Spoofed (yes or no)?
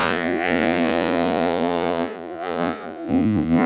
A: yes